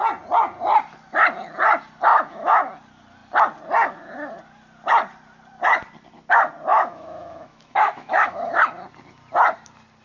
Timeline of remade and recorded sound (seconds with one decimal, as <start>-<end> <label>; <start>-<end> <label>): 0.0-2.1 recorded; 2.1-2.7 remade; 2.7-6.7 recorded; 6.7-8.6 remade; 8.6-10.0 recorded